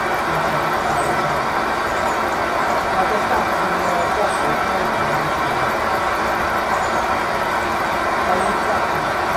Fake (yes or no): no